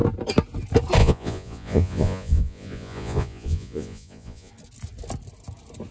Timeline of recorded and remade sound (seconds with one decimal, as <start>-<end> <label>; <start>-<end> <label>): 0.0-1.0 recorded; 1.0-4.5 remade; 4.5-5.9 recorded